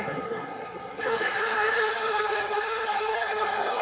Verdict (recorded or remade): remade